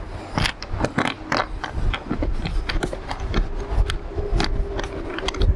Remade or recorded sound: recorded